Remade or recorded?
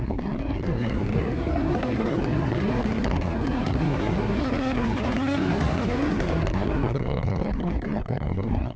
remade